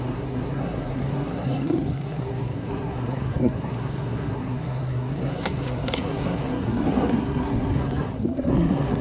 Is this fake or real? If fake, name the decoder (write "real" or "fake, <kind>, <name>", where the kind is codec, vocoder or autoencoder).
fake, codec, SNAC